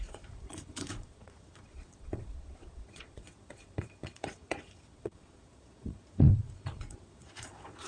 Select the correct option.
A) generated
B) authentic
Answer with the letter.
A